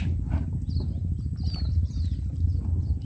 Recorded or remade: recorded